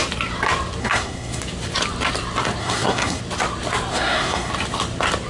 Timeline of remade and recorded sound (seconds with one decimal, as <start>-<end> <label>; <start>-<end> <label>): 0.0-0.8 recorded; 0.8-1.4 remade; 1.4-2.6 recorded; 2.6-3.2 remade; 3.2-3.9 recorded; 3.9-4.5 remade; 4.5-5.3 recorded